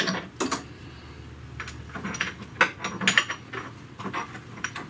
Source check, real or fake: real